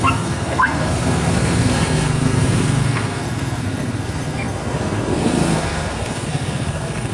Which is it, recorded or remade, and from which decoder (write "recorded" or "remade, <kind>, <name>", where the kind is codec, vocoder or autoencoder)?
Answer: remade, codec, SNAC